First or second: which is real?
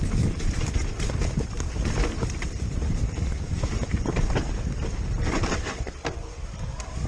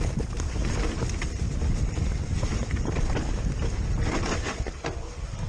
second